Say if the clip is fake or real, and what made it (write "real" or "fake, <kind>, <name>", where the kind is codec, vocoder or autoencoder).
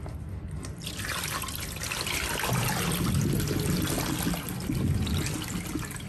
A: real